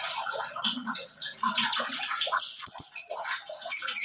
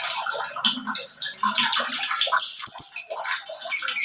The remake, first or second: first